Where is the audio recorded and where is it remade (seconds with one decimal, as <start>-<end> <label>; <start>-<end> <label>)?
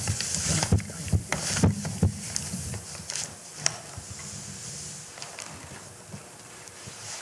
0.0-1.3 remade; 1.3-2.4 recorded; 2.4-7.2 remade